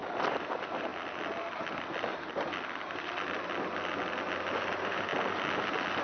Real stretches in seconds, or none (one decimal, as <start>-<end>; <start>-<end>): 0.9-4.5; 5.1-6.0